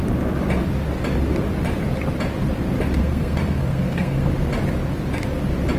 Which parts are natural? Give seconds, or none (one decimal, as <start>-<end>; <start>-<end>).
0.0-3.0; 4.3-5.8